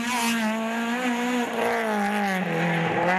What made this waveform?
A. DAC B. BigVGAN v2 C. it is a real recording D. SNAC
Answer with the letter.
C